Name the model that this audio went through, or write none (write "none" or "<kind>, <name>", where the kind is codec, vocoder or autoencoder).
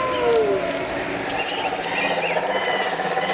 none